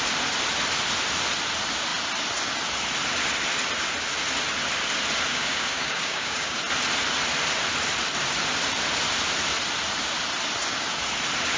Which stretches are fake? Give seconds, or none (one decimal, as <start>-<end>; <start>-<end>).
5.3-6.6